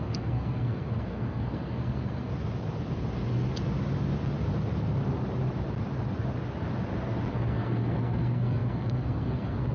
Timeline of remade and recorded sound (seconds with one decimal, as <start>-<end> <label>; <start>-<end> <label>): 0.0-2.3 remade; 2.3-7.3 recorded; 7.3-9.7 remade